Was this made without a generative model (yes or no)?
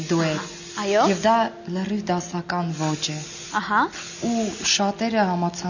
yes